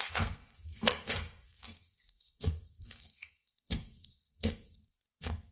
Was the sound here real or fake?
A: fake